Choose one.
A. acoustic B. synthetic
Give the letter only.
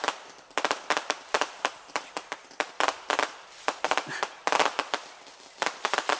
B